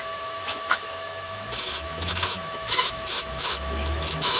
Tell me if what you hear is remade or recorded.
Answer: remade